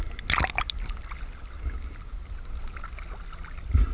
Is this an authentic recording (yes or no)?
yes